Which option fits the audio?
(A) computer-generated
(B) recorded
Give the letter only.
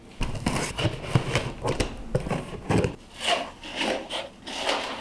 B